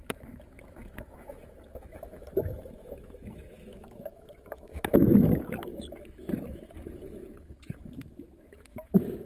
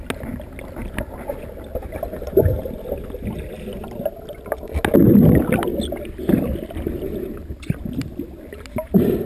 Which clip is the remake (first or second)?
first